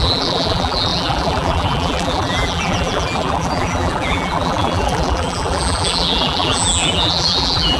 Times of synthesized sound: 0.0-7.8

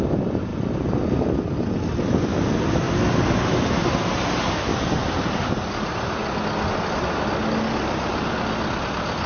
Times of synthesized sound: 0.0-0.5; 3.5-4.7; 5.7-6.2; 7.8-9.3

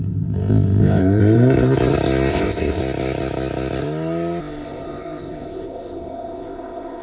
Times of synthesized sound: 0.0-1.2; 2.3-2.8; 4.4-7.0

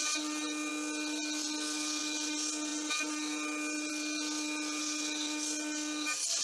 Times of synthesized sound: none

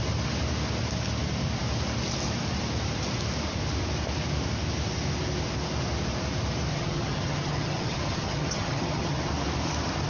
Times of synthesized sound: 6.7-9.2

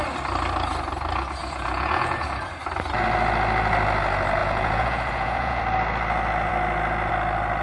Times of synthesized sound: 1.4-2.4; 4.4-5.6

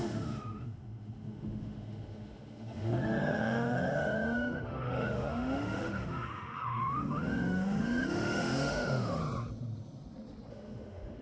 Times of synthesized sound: 0.0-9.2; 10.5-11.2

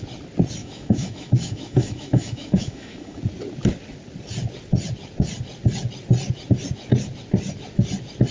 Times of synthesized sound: 0.6-3.2